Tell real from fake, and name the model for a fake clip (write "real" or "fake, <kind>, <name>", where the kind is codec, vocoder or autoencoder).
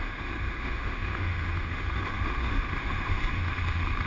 fake, autoencoder, DAC-VAE